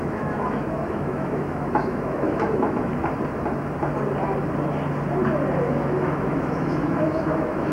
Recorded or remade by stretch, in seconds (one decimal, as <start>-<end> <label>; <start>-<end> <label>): 0.0-2.9 remade; 2.9-5.7 recorded; 5.7-7.7 remade